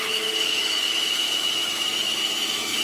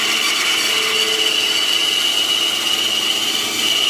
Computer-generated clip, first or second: first